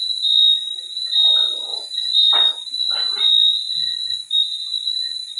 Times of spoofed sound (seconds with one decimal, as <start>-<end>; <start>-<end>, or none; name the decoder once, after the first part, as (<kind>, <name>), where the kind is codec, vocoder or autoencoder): none